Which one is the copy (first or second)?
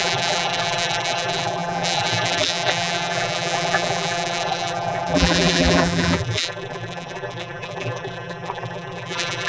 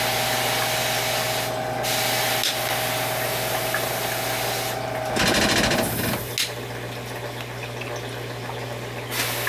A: first